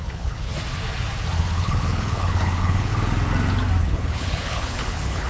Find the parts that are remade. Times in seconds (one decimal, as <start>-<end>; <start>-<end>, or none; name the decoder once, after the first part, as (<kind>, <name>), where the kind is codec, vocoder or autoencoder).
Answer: 0.0-0.5 (codec, HILCodec); 1.4-2.9; 3.8-5.3